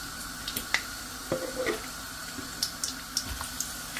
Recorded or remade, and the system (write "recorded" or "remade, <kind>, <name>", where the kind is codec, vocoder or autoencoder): recorded